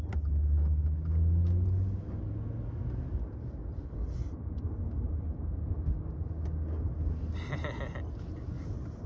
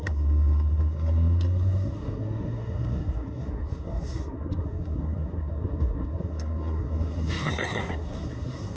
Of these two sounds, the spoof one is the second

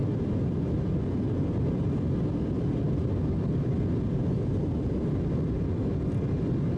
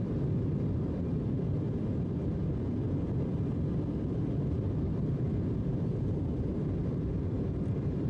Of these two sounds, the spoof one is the second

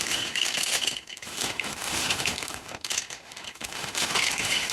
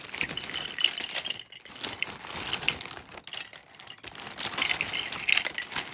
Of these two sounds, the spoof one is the first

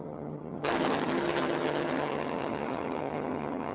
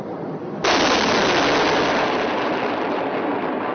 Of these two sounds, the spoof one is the first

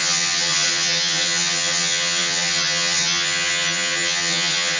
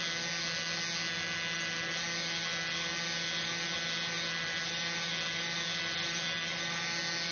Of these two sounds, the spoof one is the first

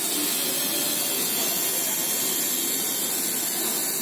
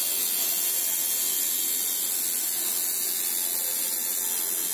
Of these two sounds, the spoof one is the first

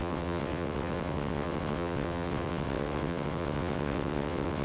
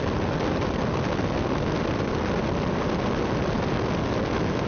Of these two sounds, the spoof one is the first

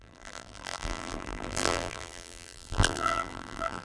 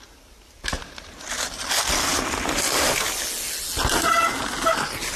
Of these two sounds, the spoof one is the first